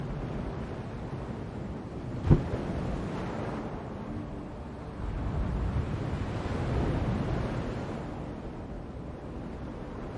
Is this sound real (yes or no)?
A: no